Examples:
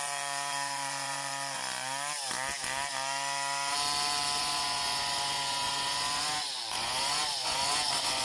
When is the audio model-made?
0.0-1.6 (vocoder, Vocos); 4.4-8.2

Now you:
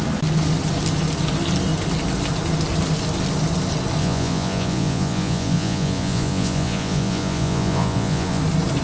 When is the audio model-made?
4.0-8.4 (vocoder, Vocos)

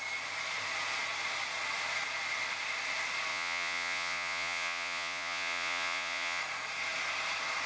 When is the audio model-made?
3.3-6.4 (vocoder, Vocos)

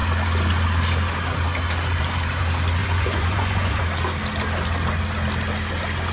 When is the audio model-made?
2.8-3.8 (vocoder, Vocos)

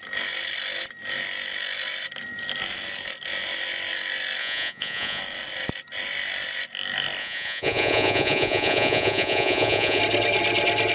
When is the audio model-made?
4.4-5.2 (vocoder, Vocos); 7.2-10.0

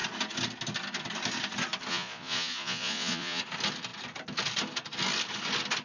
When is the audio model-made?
1.9-3.4 (vocoder, Vocos)

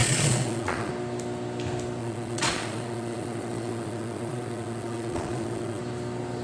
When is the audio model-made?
0.0-0.9 (vocoder, Vocos); 2.0-5.8